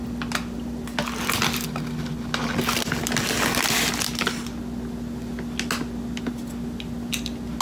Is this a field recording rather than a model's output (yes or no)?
yes